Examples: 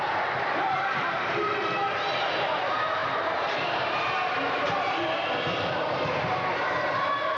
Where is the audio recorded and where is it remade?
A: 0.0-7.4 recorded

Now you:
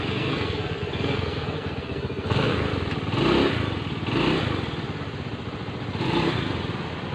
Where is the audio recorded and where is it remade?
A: 0.0-2.7 remade; 2.7-7.1 recorded